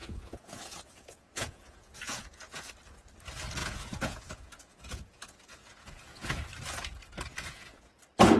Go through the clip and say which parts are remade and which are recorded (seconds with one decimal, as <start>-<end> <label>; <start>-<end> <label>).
0.0-2.7 remade; 2.7-3.6 recorded; 3.6-6.4 remade; 6.4-7.3 recorded; 7.3-8.0 remade; 8.0-8.4 recorded